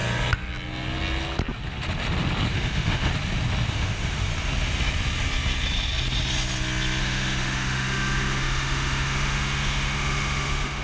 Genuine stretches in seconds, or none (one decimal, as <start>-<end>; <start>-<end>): 0.0-2.5; 3.1-3.7; 4.3-7.0